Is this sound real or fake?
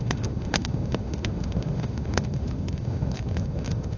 fake